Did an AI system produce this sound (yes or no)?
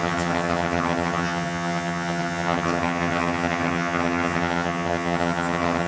yes